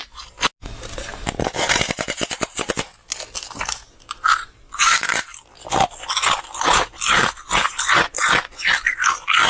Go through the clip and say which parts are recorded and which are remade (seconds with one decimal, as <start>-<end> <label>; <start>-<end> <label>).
0.0-1.1 recorded; 1.1-2.7 remade; 2.7-3.8 recorded; 3.8-5.1 remade; 5.1-9.5 recorded